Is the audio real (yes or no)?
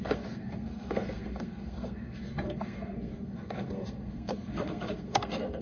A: no